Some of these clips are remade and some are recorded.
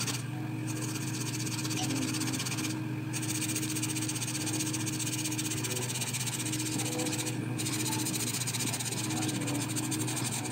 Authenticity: recorded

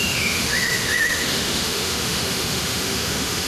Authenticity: remade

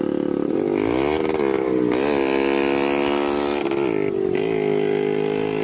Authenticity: recorded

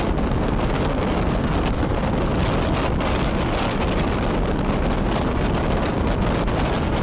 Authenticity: recorded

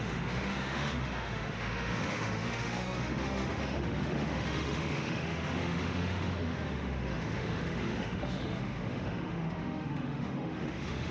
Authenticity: remade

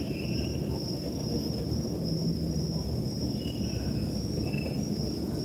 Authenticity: recorded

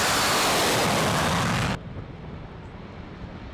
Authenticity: recorded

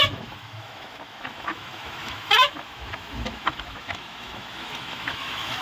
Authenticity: remade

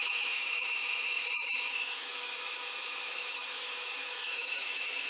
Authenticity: remade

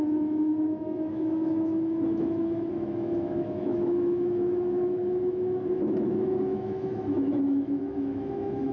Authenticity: remade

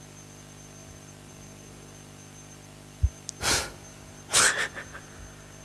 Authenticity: recorded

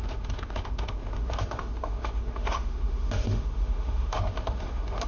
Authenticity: remade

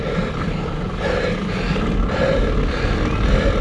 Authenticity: recorded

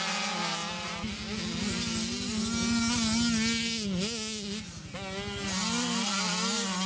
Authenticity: recorded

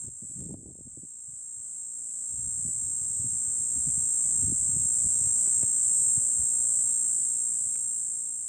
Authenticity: recorded